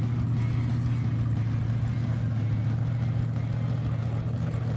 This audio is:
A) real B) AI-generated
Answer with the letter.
A